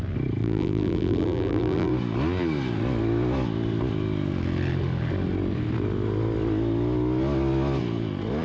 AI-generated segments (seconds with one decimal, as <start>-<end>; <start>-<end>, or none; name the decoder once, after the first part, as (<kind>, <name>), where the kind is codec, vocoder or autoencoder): 0.4-1.9 (vocoder, BigVGAN v2)